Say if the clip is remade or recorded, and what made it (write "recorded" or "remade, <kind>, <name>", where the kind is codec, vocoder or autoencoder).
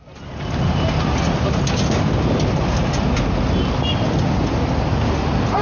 recorded